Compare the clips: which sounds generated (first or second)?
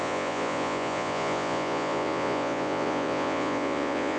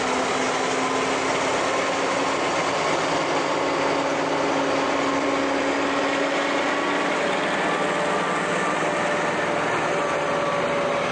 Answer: first